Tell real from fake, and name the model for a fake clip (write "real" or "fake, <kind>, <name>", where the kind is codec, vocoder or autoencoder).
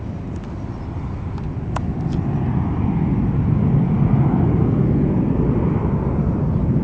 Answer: real